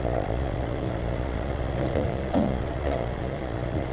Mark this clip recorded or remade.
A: remade